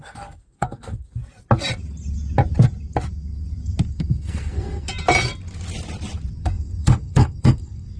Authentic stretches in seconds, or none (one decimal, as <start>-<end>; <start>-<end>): 1.2-3.9; 4.9-6.4